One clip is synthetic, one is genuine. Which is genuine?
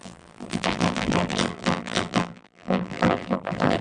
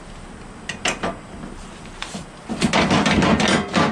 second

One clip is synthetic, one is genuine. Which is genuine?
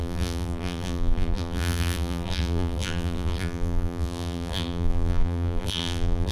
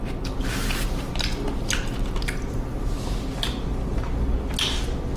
second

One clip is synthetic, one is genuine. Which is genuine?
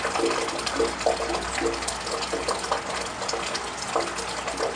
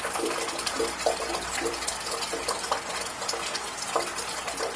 first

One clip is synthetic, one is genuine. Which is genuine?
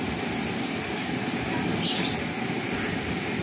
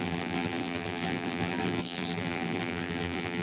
first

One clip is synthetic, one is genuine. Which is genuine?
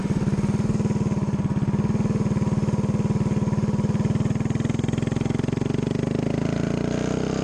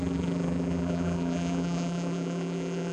first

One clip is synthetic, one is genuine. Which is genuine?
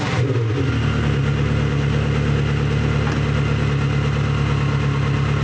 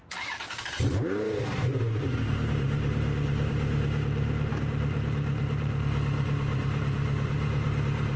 first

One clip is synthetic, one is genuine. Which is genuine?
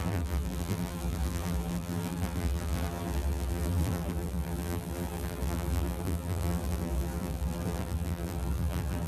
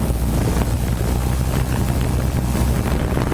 second